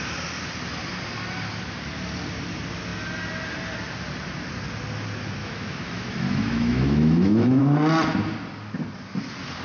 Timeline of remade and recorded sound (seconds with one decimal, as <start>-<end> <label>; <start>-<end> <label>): 0.0-5.4 recorded; 5.4-7.6 remade; 7.6-9.6 recorded